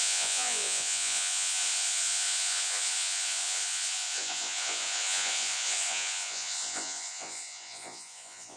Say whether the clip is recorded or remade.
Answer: remade